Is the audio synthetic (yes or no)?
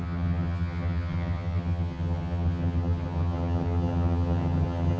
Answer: yes